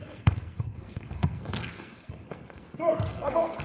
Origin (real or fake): fake